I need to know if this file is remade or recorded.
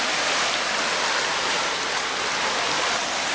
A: recorded